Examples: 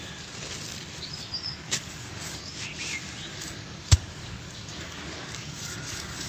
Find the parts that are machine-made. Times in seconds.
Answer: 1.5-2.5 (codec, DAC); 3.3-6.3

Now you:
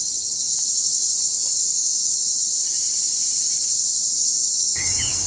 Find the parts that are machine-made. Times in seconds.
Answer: 0.0-0.5 (codec, DAC); 1.2-2.2; 4.1-5.3

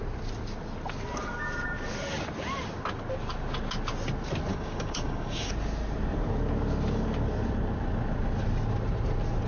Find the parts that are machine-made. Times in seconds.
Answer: 4.5-5.5 (codec, DAC)

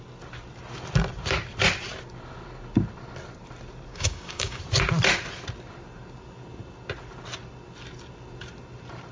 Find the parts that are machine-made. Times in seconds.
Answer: 3.9-4.6 (codec, DAC)

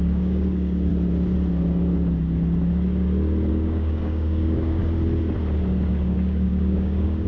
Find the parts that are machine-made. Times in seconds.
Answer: 0.0-0.9 (codec, DAC); 3.5-4.8; 5.9-7.3

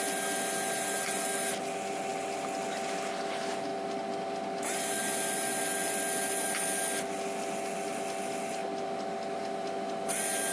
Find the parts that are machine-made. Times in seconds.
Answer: none